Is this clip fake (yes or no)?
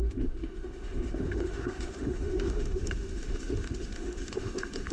yes